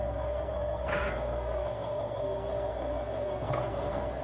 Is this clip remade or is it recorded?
remade